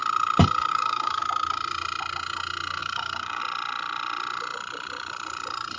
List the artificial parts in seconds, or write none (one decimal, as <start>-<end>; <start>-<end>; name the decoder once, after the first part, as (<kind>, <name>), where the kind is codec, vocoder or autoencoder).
0.7-1.2 (codec, DAC); 2.8-3.4